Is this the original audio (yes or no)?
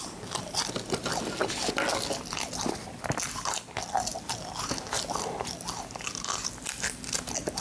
yes